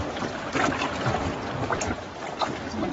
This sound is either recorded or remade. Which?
recorded